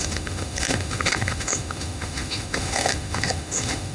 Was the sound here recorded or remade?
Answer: remade